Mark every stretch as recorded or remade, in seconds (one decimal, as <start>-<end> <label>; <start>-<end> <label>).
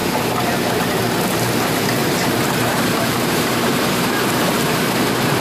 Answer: 0.0-2.0 recorded; 2.0-5.4 remade